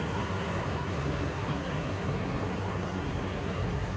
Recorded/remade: remade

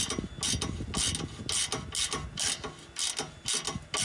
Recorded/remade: recorded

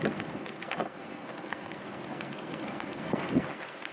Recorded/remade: remade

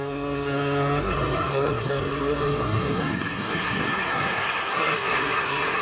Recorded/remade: remade